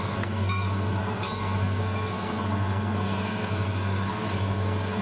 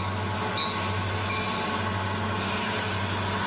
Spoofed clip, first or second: first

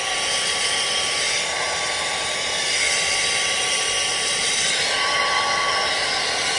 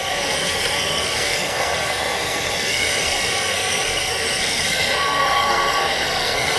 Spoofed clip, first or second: second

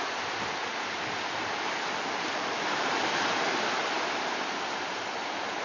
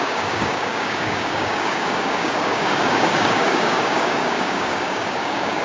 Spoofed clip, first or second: second